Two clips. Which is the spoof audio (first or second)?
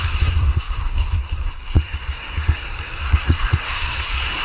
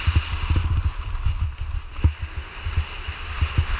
first